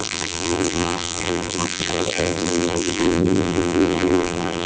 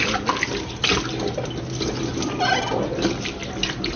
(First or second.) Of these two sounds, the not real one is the first